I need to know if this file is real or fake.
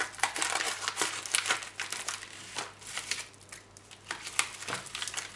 real